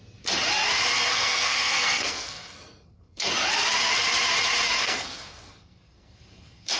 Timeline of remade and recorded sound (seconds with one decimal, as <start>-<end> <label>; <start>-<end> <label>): 0.0-1.1 recorded; 1.1-3.3 remade; 3.3-4.8 recorded; 4.8-6.8 remade

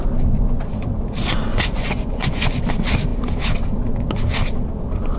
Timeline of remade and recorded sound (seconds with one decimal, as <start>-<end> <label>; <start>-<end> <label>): 0.0-1.5 recorded; 1.5-2.6 remade; 2.6-5.2 recorded

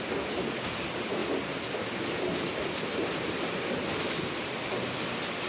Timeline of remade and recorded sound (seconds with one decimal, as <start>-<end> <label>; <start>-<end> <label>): 0.0-5.5 recorded

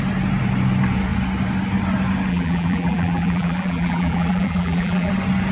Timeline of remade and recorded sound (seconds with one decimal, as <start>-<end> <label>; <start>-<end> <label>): 0.0-2.3 recorded; 2.3-5.1 remade; 5.1-5.5 recorded

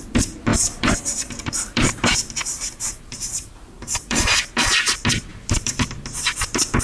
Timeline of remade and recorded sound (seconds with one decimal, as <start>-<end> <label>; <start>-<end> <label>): 0.0-0.5 recorded; 0.5-4.6 remade; 4.6-5.3 recorded; 5.3-6.0 remade; 6.0-6.8 recorded

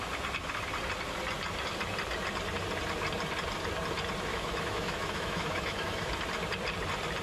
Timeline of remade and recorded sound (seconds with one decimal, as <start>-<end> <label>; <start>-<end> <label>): 0.0-4.3 recorded; 4.3-6.1 remade; 6.1-7.2 recorded

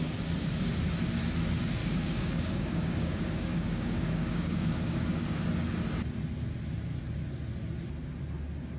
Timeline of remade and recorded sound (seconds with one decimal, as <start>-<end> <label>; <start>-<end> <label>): 0.0-1.8 recorded; 1.8-5.4 remade; 5.4-8.8 recorded

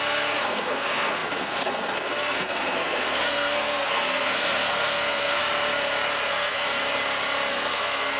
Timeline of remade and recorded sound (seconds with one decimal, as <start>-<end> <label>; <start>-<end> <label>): 0.0-5.4 remade; 5.4-6.3 recorded; 6.3-6.8 remade; 6.8-7.5 recorded; 7.5-8.2 remade